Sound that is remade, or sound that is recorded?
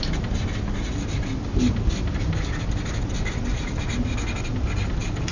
recorded